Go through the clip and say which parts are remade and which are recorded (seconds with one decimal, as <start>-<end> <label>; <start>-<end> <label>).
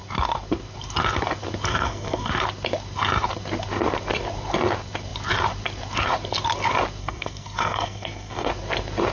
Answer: 0.0-1.7 recorded; 1.7-2.3 remade; 2.3-7.0 recorded; 7.0-8.5 remade; 8.5-9.1 recorded